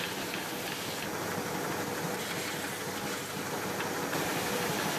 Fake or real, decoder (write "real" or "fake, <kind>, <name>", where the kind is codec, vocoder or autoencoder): real